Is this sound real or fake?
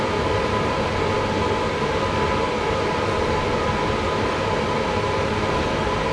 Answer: real